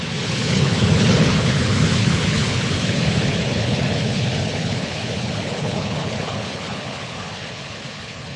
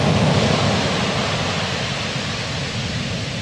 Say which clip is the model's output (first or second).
first